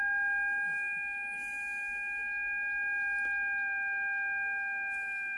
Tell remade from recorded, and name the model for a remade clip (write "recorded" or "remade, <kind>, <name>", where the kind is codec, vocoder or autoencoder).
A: recorded